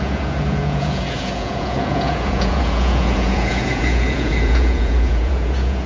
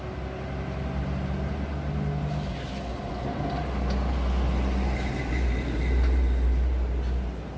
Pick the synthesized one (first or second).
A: first